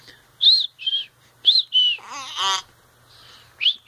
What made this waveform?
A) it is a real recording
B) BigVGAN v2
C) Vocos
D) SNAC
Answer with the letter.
A